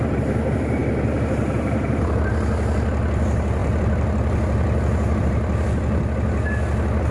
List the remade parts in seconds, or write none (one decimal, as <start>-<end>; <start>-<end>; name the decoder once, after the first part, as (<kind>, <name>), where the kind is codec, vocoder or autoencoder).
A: none